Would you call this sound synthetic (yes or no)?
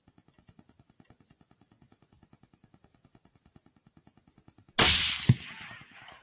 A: no